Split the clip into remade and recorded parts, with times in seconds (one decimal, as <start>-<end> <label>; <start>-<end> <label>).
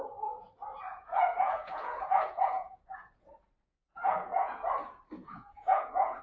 0.0-0.9 recorded; 0.9-4.6 remade; 4.6-5.2 recorded; 5.2-6.2 remade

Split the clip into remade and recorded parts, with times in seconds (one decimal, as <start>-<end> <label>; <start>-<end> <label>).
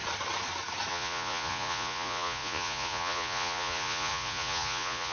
0.0-0.9 recorded; 0.9-5.1 remade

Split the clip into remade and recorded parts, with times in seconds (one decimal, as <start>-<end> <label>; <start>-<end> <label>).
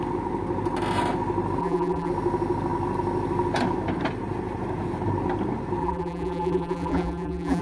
0.0-1.6 recorded; 1.6-2.1 remade; 2.1-5.8 recorded; 5.8-7.6 remade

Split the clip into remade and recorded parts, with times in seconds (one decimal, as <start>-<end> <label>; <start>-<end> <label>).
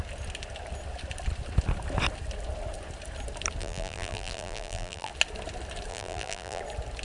0.0-3.6 recorded; 3.6-5.1 remade; 5.1-5.9 recorded; 5.9-6.6 remade; 6.6-7.0 recorded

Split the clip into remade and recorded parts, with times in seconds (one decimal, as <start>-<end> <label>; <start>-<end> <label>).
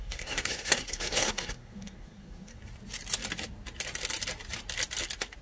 0.0-2.6 remade; 2.6-5.4 recorded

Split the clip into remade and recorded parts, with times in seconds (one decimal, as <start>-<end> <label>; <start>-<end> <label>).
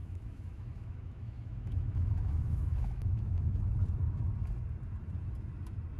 0.0-3.6 remade; 3.6-6.0 recorded